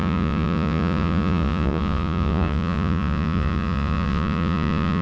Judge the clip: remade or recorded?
remade